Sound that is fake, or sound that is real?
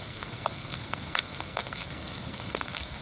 fake